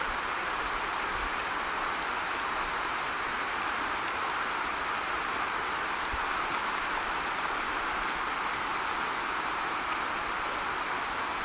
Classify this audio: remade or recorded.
recorded